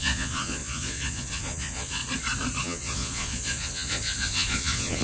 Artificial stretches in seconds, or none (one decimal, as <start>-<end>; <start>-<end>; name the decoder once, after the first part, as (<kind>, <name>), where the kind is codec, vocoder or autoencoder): 0.0-2.0 (vocoder, Vocos); 2.6-5.0